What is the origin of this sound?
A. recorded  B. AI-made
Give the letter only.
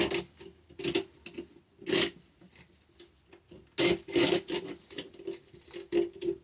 A